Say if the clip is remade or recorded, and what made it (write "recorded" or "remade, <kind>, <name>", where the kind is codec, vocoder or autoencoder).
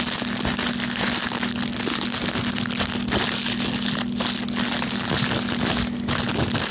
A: recorded